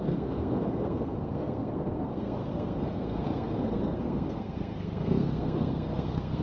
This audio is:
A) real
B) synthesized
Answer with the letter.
B